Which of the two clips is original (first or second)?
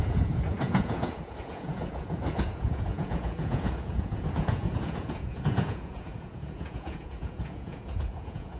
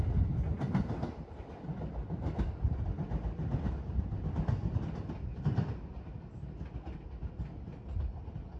second